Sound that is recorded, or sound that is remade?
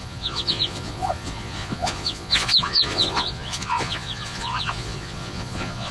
remade